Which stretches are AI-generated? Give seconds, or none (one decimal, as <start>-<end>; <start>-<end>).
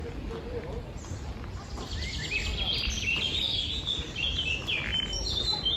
none